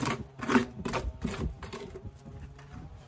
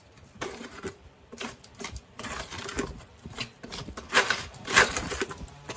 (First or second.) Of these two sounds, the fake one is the second